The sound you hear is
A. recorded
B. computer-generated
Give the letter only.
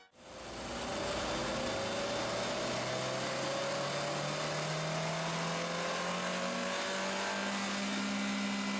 A